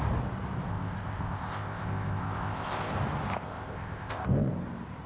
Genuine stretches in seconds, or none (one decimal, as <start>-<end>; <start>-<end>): 0.0-0.7; 2.9-3.3; 4.5-5.1